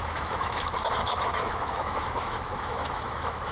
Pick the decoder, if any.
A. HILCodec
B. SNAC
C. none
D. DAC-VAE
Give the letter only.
D